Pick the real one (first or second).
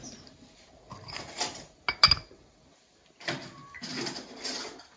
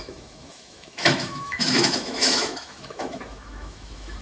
first